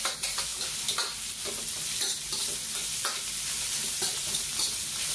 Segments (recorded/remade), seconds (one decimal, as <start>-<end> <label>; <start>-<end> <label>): 0.0-0.5 remade; 0.5-3.6 recorded; 3.6-5.1 remade